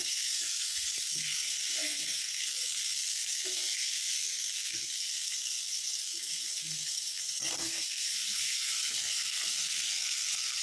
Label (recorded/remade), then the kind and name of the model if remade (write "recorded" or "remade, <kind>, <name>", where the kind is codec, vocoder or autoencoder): remade, codec, SNAC